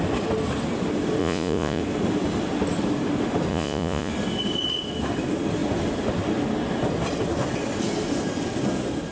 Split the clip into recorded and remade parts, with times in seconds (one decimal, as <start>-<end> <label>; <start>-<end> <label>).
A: 0.0-1.2 recorded; 1.2-1.8 remade; 1.8-3.5 recorded; 3.5-4.1 remade; 4.1-9.1 recorded